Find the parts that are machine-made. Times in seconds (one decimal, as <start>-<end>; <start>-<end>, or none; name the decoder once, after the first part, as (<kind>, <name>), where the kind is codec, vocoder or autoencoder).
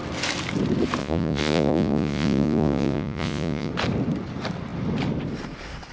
1.0-3.7 (vocoder, Vocos)